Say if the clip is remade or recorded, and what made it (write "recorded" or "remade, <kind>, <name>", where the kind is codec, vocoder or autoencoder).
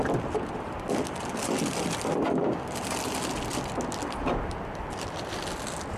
recorded